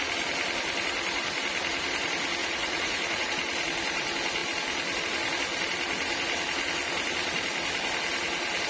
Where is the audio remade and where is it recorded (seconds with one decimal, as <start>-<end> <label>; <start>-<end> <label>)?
0.0-2.4 recorded; 2.4-3.3 remade; 3.3-8.7 recorded